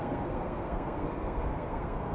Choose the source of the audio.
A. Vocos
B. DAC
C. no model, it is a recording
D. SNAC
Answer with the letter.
D